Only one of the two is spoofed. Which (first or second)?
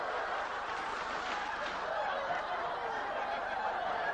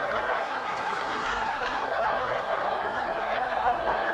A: second